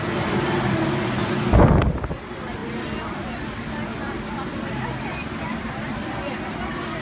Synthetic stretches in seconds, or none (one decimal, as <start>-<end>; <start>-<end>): none